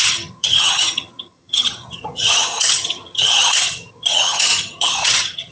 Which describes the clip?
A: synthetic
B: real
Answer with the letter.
A